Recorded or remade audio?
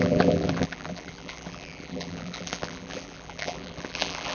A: remade